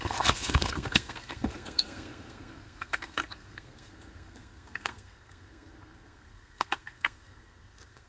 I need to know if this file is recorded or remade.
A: remade